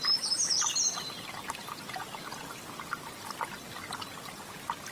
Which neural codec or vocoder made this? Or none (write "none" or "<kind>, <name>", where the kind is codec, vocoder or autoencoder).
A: none